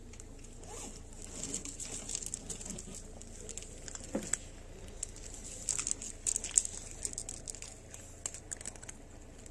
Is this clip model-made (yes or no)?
no